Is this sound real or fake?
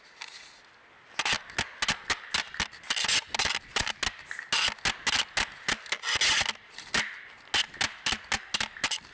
real